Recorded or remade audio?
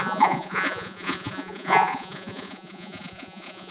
remade